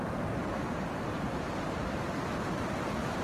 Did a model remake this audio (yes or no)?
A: no